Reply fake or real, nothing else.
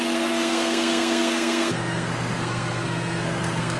fake